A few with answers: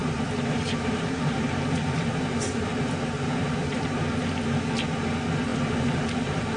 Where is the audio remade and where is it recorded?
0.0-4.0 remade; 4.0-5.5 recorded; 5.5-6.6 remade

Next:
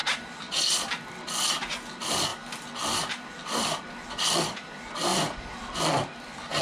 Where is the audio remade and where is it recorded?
0.0-6.6 recorded

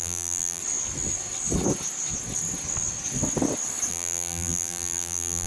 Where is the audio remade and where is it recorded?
0.0-0.6 remade; 0.6-3.9 recorded; 3.9-5.5 remade

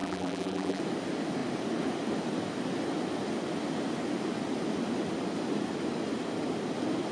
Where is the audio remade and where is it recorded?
0.0-0.8 remade; 0.8-7.1 recorded

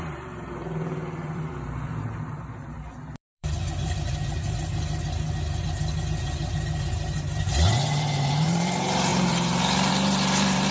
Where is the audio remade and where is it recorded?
0.0-4.3 remade; 4.3-6.2 recorded; 6.2-10.7 remade

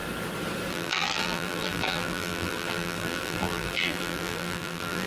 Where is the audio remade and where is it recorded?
0.0-0.7 recorded; 0.7-5.1 remade

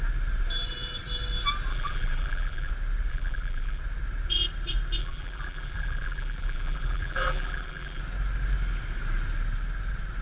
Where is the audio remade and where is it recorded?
0.0-1.7 recorded; 1.7-2.7 remade; 2.7-3.1 recorded; 3.1-3.8 remade; 3.8-5.0 recorded; 5.0-8.0 remade; 8.0-10.2 recorded